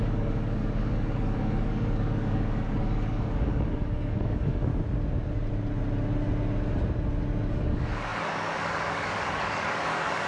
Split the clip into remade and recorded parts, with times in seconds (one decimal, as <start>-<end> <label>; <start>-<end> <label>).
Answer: 0.0-4.7 remade; 4.7-7.5 recorded; 7.5-10.3 remade